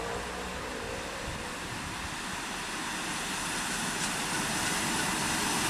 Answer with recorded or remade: recorded